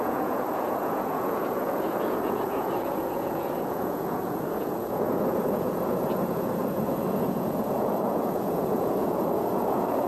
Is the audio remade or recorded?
remade